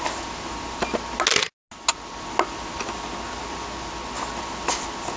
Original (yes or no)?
yes